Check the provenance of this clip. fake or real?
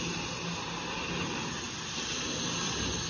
real